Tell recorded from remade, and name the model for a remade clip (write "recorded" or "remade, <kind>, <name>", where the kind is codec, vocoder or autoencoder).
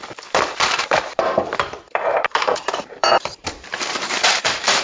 remade, vocoder, BigVGAN v2